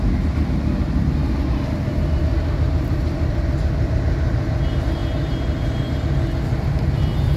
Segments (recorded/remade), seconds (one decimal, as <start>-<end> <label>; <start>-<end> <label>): 0.0-7.4 recorded